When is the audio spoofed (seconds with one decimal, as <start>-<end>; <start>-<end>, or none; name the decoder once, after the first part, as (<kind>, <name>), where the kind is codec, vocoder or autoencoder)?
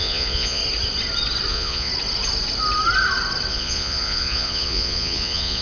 0.0-0.6 (vocoder, Vocos); 1.5-1.9; 3.5-5.6